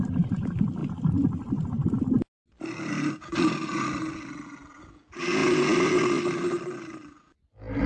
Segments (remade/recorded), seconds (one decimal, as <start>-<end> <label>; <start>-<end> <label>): 0.0-7.9 recorded